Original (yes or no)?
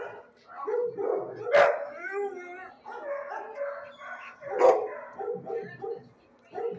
yes